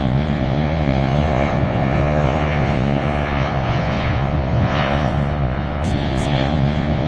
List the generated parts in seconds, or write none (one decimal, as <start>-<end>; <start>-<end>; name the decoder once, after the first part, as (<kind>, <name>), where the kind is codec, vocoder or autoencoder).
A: 0.0-7.1 (vocoder, Vocos)